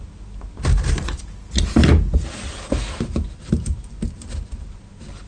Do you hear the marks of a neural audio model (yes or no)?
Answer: no